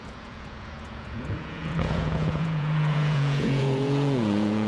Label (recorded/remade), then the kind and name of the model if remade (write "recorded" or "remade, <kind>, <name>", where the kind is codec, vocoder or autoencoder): remade, vocoder, Vocos